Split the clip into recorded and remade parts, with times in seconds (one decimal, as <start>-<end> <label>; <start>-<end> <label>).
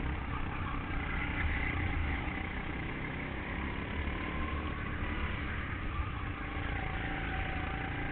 0.0-2.0 recorded; 2.0-3.4 remade; 3.4-8.1 recorded